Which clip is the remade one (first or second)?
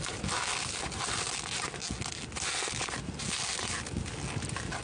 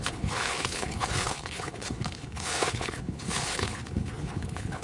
second